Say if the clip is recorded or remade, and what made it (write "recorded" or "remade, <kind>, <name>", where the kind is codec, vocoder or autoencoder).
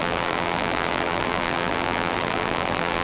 remade, vocoder, BigVGAN v2